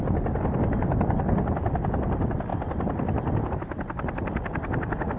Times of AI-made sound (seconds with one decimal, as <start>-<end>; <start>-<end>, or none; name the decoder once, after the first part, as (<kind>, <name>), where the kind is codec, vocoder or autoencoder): none